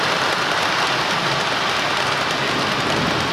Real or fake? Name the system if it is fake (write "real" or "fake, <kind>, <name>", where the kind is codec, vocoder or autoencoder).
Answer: fake, vocoder, BigVGAN v2